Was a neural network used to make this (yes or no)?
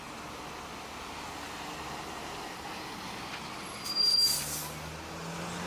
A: no